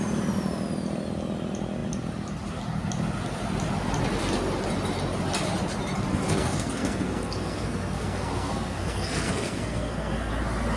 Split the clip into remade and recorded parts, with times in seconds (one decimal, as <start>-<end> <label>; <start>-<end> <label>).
0.0-6.1 recorded; 6.1-10.3 remade; 10.3-10.8 recorded